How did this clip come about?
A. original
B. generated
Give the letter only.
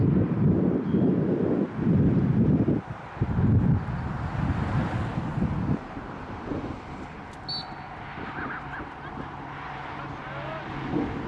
A